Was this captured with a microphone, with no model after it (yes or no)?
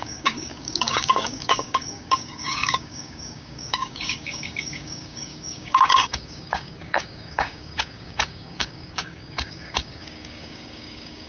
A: no